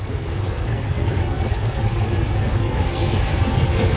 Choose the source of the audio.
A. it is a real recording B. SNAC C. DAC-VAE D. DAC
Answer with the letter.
B